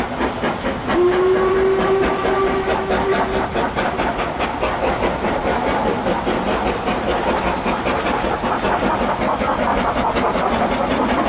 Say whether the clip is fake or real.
real